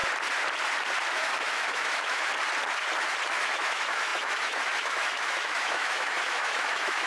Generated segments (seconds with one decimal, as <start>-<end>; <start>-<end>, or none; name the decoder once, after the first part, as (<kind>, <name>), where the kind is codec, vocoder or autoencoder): 1.1-2.3 (autoencoder, DAC-VAE); 3.3-7.1